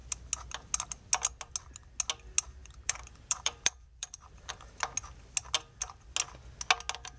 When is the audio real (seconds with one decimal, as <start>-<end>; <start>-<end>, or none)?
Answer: 0.0-2.6; 4.5-7.2